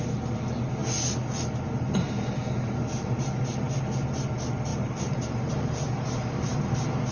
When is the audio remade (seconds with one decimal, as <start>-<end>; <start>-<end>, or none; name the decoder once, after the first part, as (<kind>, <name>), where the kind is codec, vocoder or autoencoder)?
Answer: 4.7-5.5 (vocoder, BigVGAN v2)